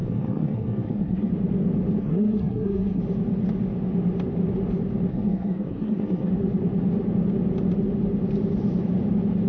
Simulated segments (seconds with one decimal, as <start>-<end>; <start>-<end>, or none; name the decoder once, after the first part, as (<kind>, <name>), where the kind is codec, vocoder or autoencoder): 0.0-1.3 (codec, SNAC); 2.0-3.0; 5.1-6.3